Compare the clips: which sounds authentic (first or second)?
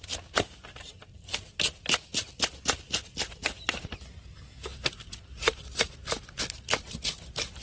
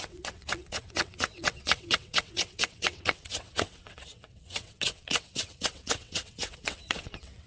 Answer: first